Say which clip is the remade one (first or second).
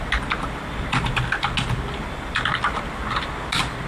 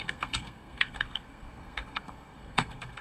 second